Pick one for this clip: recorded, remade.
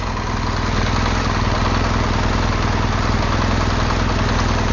recorded